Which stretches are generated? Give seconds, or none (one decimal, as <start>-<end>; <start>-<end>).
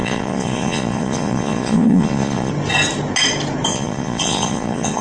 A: 0.0-2.5; 3.7-5.0